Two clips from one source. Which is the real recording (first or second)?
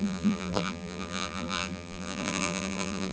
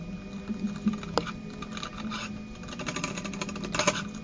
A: second